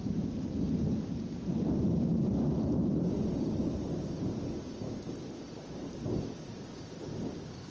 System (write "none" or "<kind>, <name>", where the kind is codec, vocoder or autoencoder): none